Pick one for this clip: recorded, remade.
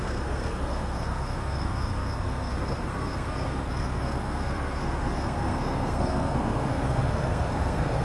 remade